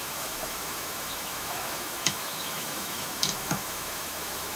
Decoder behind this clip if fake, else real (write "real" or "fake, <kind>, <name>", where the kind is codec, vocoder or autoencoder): fake, autoencoder, DAC-VAE